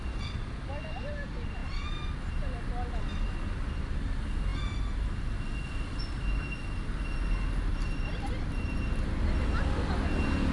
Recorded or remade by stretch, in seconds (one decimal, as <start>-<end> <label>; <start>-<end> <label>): 0.0-10.5 recorded